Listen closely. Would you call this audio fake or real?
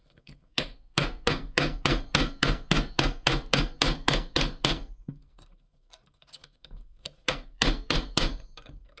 fake